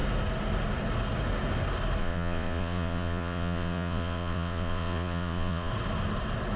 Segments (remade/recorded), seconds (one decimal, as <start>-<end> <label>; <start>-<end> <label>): 0.0-2.0 recorded; 2.0-5.7 remade; 5.7-6.6 recorded